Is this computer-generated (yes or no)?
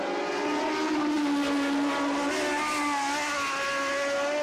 no